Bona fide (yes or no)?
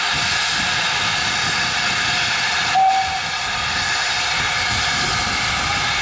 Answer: yes